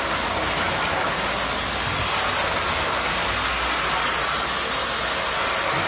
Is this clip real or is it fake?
real